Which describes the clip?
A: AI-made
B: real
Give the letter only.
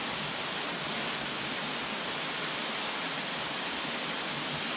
B